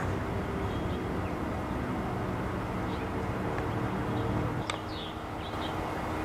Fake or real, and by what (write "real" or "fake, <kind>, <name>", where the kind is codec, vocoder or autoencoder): real